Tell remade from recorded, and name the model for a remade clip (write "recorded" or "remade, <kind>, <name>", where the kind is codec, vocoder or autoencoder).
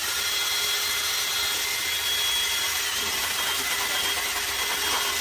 recorded